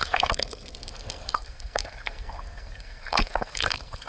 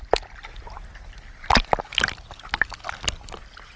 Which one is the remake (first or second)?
first